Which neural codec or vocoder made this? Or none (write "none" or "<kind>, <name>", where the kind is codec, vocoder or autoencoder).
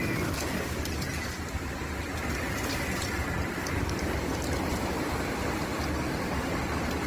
none